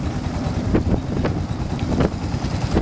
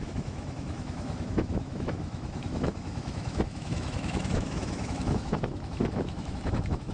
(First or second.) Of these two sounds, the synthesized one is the second